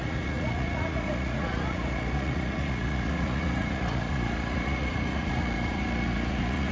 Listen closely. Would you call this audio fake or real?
fake